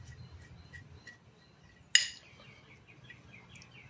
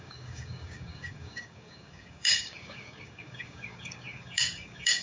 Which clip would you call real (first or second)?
first